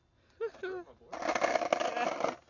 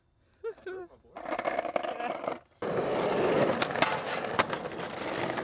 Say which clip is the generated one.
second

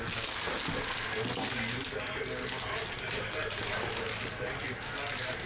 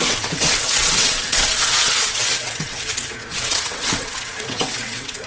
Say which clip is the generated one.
second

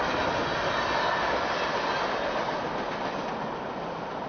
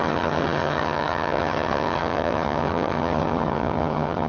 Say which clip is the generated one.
second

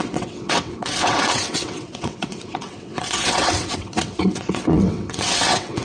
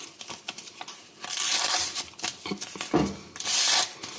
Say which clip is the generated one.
first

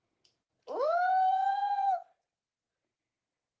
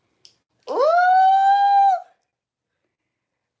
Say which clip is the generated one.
first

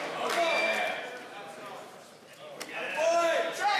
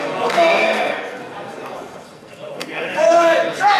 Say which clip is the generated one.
second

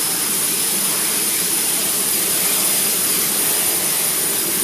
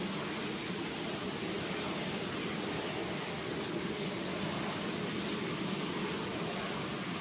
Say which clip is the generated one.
first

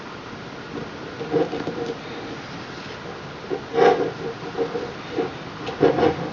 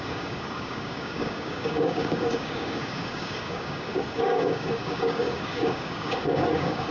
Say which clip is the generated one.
second